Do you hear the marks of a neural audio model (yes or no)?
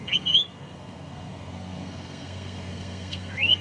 yes